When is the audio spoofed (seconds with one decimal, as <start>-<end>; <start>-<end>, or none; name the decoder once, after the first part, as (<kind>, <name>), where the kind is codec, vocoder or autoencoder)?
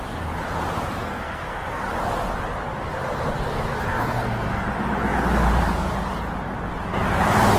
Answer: 1.0-1.8 (codec, SNAC); 3.9-4.6